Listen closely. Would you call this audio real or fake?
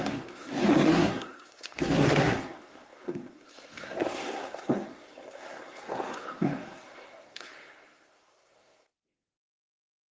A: fake